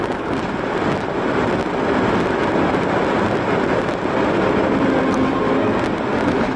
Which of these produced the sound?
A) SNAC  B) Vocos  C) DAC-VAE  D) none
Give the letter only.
D